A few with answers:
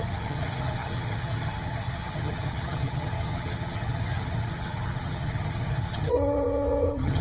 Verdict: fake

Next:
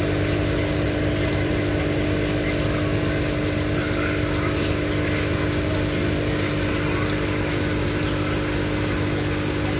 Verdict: real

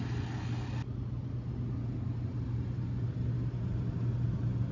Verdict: real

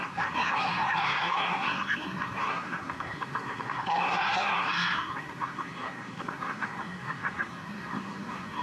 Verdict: fake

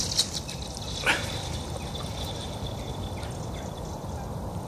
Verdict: real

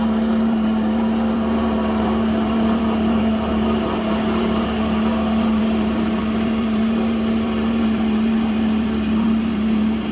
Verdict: fake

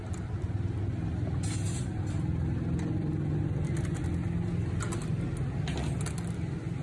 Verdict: real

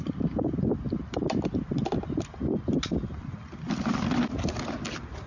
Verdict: real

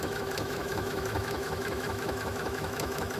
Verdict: fake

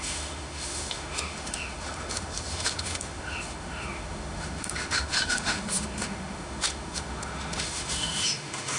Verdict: fake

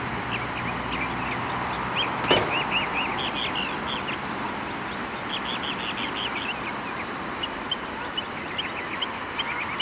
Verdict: real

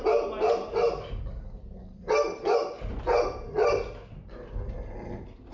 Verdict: real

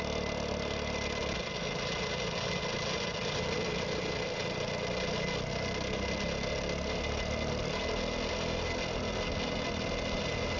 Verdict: real